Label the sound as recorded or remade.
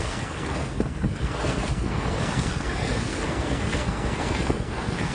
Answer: remade